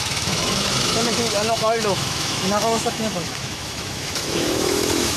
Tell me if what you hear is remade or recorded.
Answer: remade